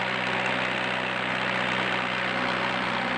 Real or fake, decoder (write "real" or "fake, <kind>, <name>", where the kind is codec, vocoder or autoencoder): real